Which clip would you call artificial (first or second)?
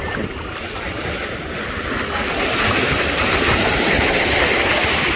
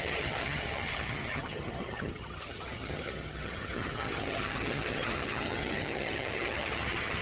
second